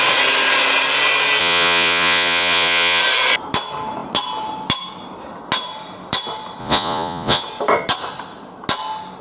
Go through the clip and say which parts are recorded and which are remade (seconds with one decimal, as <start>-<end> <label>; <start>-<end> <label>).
0.0-1.4 recorded; 1.4-3.0 remade; 3.0-6.6 recorded; 6.6-7.4 remade; 7.4-9.2 recorded